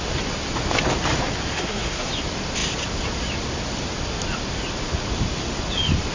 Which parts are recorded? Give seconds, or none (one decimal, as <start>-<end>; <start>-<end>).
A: 0.0-1.5; 2.1-6.1